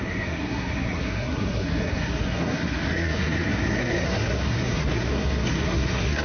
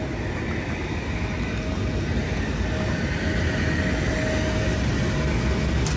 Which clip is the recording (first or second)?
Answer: second